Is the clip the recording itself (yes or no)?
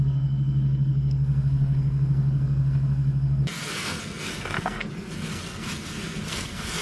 no